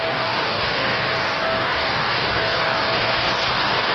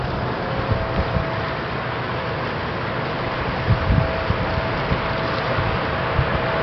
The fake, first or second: first